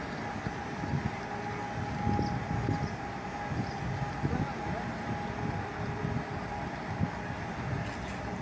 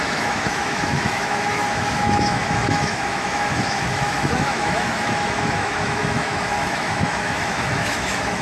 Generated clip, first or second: second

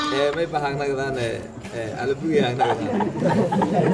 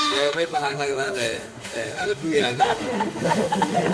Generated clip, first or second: second